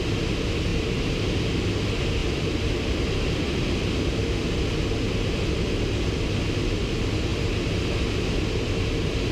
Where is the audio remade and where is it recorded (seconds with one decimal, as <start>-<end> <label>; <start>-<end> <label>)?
0.0-2.2 recorded; 2.2-3.8 remade; 3.8-9.3 recorded